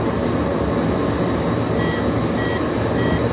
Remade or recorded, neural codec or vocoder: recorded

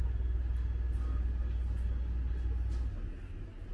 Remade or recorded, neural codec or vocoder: recorded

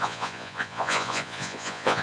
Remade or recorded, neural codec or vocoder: remade, vocoder, Vocos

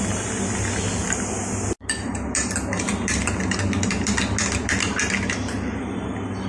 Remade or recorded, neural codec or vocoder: recorded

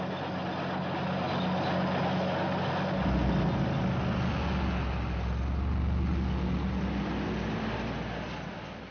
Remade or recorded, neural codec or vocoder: recorded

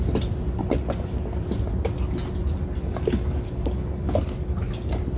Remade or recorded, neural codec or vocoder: recorded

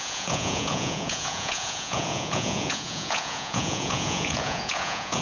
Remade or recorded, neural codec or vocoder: remade, vocoder, Vocos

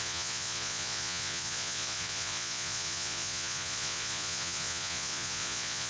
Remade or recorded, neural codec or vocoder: remade, vocoder, Vocos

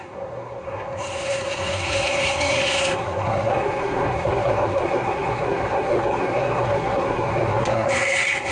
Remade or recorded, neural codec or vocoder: remade, codec, SNAC